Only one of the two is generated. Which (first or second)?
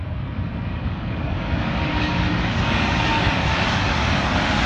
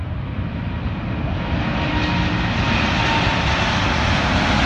first